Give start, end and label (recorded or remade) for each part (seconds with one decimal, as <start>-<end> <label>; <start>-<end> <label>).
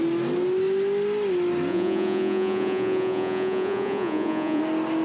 0.0-1.7 recorded; 1.7-4.6 remade; 4.6-5.0 recorded